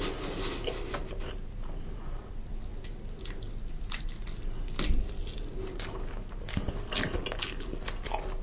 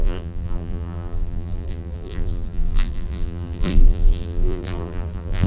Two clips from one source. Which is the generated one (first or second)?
second